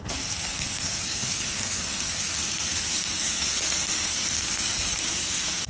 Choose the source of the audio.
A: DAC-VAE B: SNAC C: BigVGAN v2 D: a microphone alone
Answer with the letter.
B